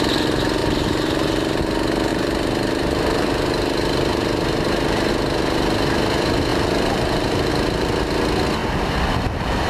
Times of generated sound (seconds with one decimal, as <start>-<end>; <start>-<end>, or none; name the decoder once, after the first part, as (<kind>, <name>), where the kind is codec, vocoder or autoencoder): 0.6-1.6 (vocoder, BigVGAN v2); 2.1-5.1; 6.5-7.5